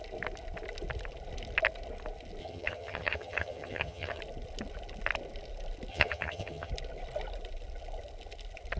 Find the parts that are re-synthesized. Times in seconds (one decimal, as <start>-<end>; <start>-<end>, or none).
2.4-4.2; 5.9-6.7